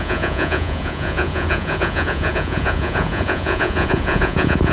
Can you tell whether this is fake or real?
fake